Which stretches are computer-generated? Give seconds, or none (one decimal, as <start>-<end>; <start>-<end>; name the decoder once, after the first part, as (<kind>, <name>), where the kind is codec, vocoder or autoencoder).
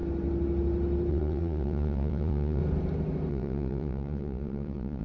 1.1-2.6 (vocoder, WaveNeXt); 3.3-5.0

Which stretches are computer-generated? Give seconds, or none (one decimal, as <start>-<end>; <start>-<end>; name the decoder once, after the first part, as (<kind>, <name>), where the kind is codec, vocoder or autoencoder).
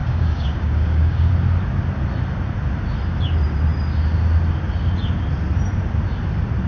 0.0-1.3 (codec, DAC)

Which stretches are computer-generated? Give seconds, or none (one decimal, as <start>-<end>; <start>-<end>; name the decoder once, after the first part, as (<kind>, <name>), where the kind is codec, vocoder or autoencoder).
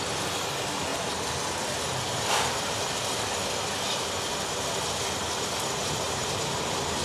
0.9-2.8 (vocoder, BigVGAN v2)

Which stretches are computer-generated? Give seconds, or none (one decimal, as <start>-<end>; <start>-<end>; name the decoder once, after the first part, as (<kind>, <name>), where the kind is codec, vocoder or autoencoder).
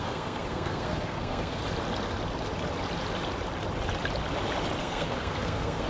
0.0-1.6 (codec, SNAC); 4.8-5.9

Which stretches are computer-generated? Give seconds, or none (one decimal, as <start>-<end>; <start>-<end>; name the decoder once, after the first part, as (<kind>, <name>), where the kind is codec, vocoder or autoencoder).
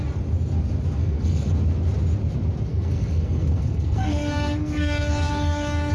1.0-1.5 (codec, SNAC); 2.7-5.9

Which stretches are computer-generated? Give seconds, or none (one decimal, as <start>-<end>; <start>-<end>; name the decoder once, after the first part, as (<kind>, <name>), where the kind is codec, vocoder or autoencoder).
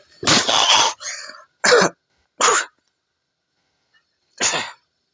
0.4-1.1 (vocoder, HiFi-GAN)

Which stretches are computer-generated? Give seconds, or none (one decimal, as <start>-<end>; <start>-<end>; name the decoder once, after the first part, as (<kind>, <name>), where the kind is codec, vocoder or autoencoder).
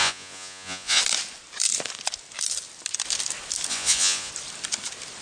0.0-1.0 (vocoder, Vocos); 3.7-4.3